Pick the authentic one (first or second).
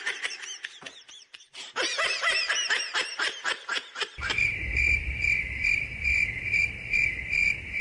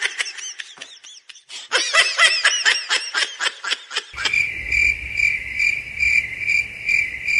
second